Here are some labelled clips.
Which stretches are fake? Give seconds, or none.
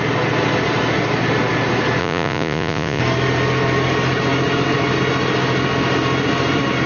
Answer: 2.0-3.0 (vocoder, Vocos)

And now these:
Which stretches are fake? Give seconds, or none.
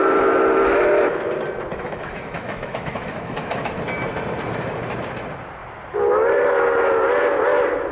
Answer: 1.7-3.8 (autoencoder, DAC-VAE)